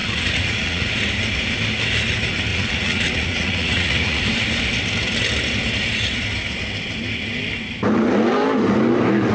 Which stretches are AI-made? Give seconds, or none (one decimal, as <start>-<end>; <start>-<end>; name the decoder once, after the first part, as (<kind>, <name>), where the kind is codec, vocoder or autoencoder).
0.0-0.9 (vocoder, Vocos); 2.5-4.2